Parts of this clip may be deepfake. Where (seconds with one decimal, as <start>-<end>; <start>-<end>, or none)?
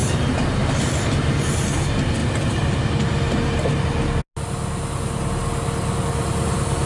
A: none